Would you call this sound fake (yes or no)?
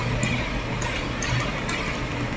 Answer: no